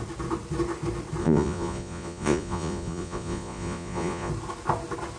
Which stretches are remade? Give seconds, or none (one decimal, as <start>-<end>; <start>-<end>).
1.2-4.3